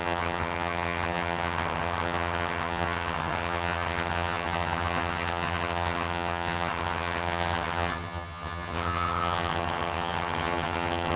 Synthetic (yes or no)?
yes